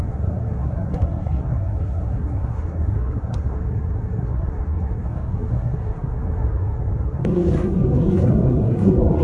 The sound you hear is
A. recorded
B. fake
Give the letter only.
B